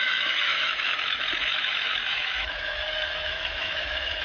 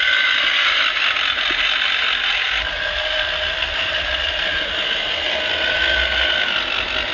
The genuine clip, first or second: second